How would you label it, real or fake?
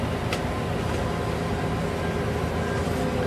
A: real